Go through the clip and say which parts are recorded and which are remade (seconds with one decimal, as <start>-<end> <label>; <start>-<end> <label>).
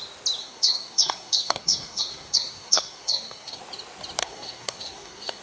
0.0-0.4 recorded; 0.4-3.6 remade; 3.6-4.2 recorded; 4.2-5.4 remade